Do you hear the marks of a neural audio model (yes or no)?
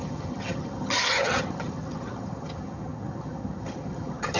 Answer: yes